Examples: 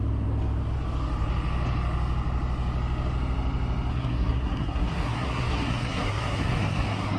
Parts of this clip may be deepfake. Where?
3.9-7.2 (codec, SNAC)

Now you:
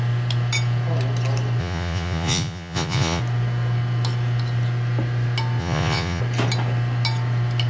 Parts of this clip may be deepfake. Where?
1.6-3.2 (vocoder, Vocos); 5.6-6.2